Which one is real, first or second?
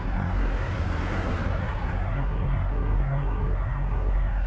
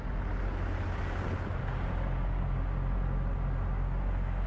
second